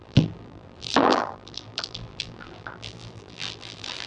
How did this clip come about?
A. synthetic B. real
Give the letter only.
A